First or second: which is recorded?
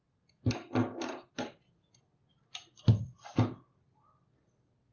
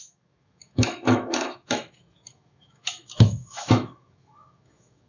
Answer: first